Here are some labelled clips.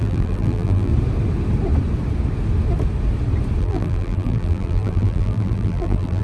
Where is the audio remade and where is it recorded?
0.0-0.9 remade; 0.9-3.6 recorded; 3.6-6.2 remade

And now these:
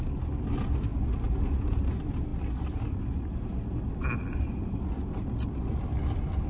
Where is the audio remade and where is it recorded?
0.0-6.5 recorded

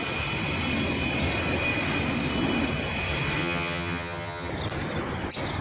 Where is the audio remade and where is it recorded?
0.0-3.4 recorded; 3.4-4.5 remade; 4.5-5.6 recorded